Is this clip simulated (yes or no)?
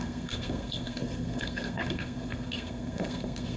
yes